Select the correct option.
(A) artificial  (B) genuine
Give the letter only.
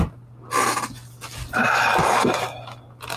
B